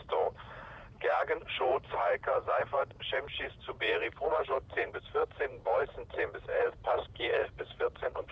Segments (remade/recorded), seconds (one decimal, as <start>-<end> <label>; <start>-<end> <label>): 0.0-8.3 remade